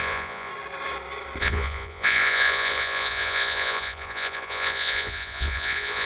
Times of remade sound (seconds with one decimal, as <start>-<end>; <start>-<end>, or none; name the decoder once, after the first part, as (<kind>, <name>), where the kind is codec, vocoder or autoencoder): 0.0-0.5 (vocoder, Vocos); 1.4-6.1